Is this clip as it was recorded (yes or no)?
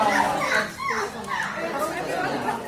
yes